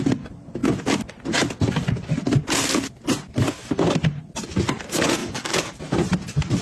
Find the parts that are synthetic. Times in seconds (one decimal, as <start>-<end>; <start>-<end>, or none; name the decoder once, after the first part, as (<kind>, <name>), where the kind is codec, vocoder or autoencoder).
5.2-5.7 (codec, DAC)